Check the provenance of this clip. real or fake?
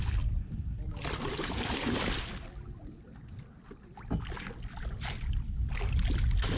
real